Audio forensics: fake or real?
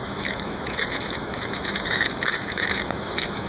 fake